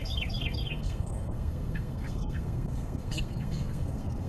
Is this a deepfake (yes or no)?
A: yes